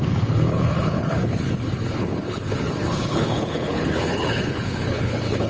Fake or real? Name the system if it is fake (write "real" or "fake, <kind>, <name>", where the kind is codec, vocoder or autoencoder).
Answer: fake, codec, HILCodec